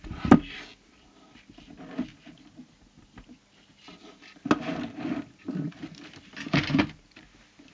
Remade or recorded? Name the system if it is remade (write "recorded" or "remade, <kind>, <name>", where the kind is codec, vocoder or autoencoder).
recorded